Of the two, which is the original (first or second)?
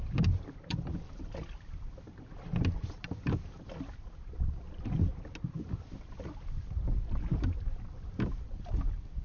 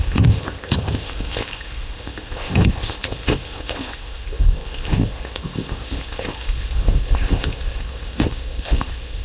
first